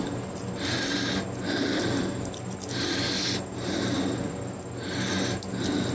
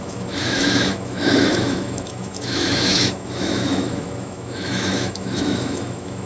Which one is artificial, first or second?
second